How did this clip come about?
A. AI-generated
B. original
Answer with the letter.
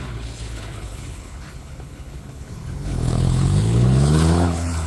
A